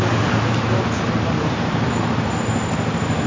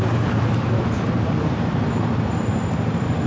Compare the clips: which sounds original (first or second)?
first